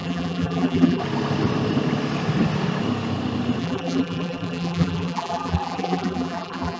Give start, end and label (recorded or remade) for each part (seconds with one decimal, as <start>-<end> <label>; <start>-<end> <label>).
0.0-1.0 remade; 1.0-3.6 recorded; 3.6-6.8 remade